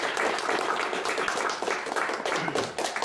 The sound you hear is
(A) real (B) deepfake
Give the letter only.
A